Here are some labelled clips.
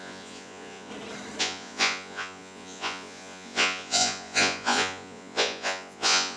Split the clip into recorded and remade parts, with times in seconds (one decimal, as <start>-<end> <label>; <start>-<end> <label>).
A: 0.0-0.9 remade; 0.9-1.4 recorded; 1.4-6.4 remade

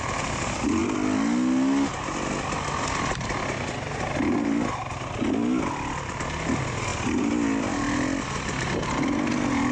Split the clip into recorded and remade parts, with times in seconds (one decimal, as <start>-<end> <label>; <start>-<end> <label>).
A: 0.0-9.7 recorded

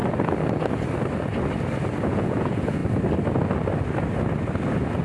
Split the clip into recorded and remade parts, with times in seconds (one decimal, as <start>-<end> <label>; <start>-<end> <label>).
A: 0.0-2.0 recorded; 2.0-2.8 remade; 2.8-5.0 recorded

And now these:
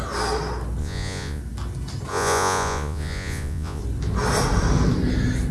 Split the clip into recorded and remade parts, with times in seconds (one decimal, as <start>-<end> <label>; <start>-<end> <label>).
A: 0.0-0.8 recorded; 0.8-1.4 remade; 1.4-2.1 recorded; 2.1-3.8 remade; 3.8-5.5 recorded

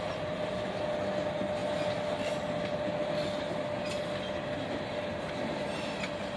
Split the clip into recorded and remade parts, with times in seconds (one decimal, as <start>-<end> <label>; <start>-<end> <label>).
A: 0.0-6.4 recorded

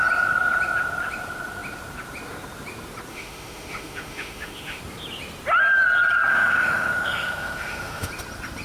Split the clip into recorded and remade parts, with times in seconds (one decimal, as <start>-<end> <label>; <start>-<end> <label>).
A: 0.0-3.1 recorded; 3.1-4.8 remade; 4.8-6.3 recorded; 6.3-8.1 remade; 8.1-8.6 recorded

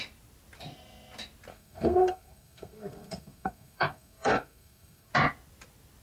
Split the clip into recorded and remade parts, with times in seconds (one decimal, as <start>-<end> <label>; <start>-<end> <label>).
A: 0.0-1.5 recorded; 1.5-5.1 remade; 5.1-6.0 recorded